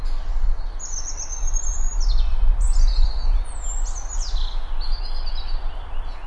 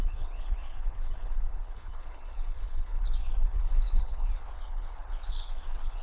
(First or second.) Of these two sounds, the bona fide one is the first